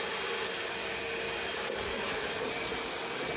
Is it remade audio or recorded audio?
recorded